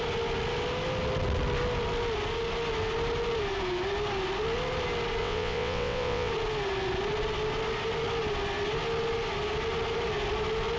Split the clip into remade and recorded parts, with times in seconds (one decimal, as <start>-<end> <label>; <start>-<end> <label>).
0.0-5.2 recorded; 5.2-6.3 remade; 6.3-10.8 recorded